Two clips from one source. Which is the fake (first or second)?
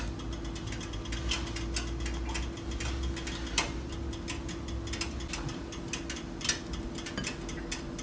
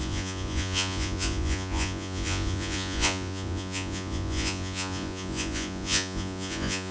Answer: second